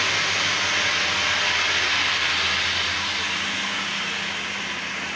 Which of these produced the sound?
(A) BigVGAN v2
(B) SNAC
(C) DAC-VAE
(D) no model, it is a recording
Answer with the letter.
D